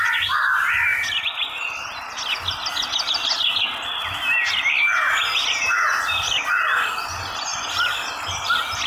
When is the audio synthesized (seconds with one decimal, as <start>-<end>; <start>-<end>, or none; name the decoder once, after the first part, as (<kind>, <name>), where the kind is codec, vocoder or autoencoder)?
0.0-0.9 (vocoder, BigVGAN v2); 5.5-8.9